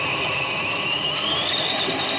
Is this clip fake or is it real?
real